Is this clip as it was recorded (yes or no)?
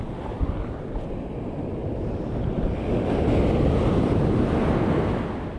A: yes